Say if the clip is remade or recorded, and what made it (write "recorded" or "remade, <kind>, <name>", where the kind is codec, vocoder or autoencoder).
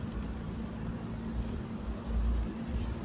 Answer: remade, vocoder, BigVGAN v2